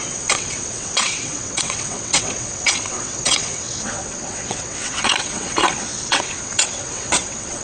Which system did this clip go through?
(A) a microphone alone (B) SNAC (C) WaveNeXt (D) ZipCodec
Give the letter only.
C